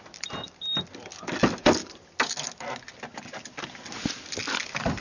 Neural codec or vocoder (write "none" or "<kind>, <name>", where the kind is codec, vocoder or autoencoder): none